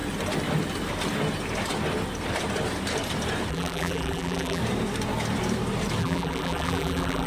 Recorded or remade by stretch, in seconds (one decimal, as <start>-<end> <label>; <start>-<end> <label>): 0.0-3.5 recorded; 3.5-4.6 remade; 4.6-6.0 recorded; 6.0-7.3 remade